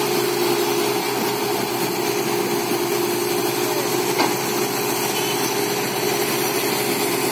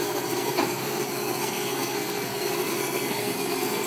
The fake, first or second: second